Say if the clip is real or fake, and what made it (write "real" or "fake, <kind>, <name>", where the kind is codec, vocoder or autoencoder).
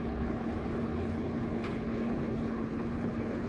fake, codec, HILCodec